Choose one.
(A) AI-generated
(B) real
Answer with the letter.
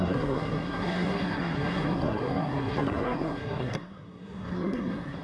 A